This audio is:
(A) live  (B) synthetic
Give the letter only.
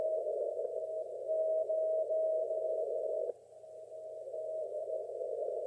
A